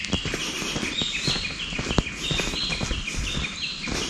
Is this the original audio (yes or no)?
yes